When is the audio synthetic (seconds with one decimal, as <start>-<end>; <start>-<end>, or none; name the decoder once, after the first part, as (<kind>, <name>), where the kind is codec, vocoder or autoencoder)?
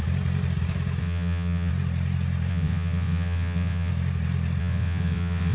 1.0-1.7 (vocoder, WaveNeXt); 2.5-3.9; 4.6-5.5